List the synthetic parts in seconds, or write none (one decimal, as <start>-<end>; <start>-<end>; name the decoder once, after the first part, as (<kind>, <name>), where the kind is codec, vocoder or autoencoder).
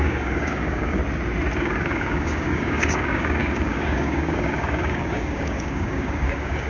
0.0-1.0 (codec, DAC); 1.6-6.7